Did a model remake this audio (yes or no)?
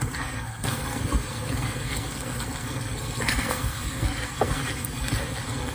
yes